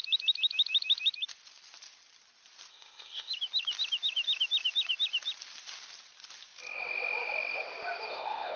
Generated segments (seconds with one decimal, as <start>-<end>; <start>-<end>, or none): 2.7-3.3; 8.1-8.6